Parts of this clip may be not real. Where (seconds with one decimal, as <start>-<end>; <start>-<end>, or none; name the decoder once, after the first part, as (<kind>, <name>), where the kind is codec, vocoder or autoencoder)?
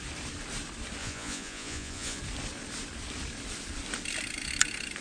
1.0-2.2 (vocoder, Vocos)